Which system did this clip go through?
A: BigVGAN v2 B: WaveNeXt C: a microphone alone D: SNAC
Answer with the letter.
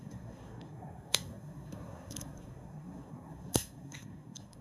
D